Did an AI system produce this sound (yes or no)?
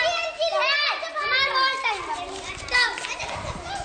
no